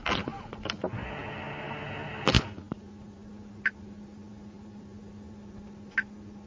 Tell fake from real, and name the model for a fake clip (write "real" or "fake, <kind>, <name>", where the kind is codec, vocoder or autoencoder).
real